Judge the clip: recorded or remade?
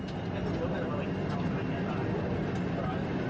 recorded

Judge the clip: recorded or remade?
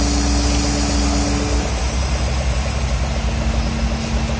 recorded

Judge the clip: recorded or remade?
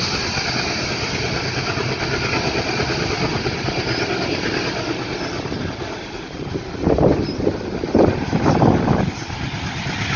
recorded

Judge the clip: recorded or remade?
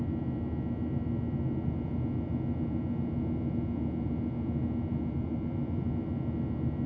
recorded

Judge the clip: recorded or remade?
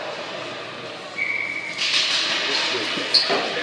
recorded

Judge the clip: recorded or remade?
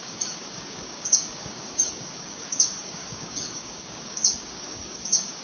remade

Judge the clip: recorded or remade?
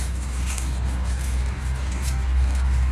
remade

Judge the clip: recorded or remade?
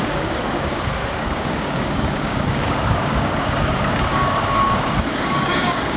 remade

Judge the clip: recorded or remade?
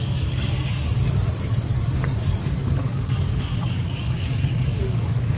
remade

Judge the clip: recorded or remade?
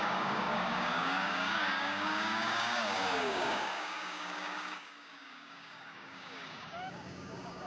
remade